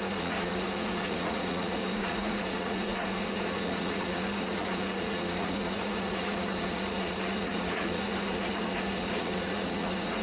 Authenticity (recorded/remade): remade